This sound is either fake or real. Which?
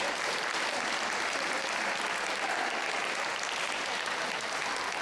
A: real